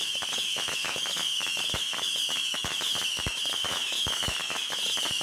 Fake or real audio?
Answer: fake